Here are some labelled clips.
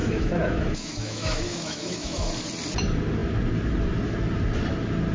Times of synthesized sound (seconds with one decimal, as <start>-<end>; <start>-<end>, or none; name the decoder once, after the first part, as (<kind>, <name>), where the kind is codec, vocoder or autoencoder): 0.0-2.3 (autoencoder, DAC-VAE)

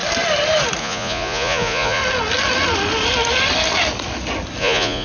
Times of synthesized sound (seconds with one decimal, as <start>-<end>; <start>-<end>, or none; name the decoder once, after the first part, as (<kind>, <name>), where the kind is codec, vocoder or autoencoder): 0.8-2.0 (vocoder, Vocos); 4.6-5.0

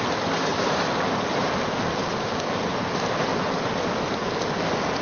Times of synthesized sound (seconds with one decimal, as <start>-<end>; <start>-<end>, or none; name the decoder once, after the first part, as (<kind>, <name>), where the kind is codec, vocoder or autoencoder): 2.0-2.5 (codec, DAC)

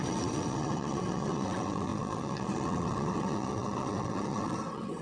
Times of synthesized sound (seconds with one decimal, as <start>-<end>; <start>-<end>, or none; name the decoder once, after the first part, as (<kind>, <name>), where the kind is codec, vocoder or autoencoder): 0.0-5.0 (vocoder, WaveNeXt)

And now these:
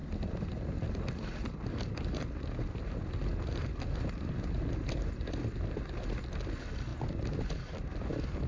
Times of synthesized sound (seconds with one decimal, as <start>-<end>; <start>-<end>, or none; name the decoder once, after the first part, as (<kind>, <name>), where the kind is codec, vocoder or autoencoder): none

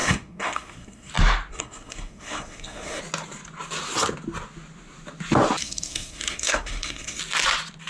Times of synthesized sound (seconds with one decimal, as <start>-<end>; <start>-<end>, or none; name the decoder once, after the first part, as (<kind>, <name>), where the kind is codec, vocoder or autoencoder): 0.0-1.1 (codec, SNAC); 1.5-3.0; 5.6-7.2

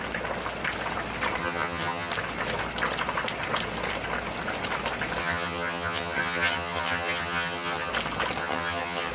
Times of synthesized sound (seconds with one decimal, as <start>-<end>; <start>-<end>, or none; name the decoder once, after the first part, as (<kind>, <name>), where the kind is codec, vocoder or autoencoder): 1.4-2.1 (vocoder, HiFi-GAN); 5.2-7.9; 8.4-9.1